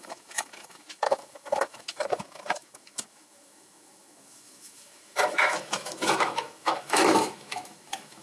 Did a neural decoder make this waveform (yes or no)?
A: yes